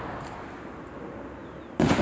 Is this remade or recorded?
recorded